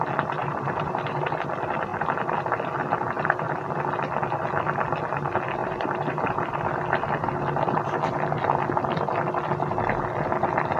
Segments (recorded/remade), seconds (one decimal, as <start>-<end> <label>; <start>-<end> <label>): 0.0-0.4 recorded; 0.4-1.3 remade; 1.3-1.9 recorded; 1.9-2.5 remade; 2.5-5.6 recorded; 5.6-6.5 remade; 6.5-10.8 recorded